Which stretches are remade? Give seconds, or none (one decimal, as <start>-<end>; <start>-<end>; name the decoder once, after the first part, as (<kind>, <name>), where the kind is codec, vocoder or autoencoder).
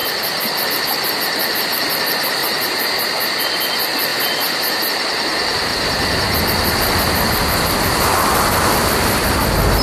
2.4-3.4 (vocoder, BigVGAN v2); 4.1-4.8; 5.7-6.4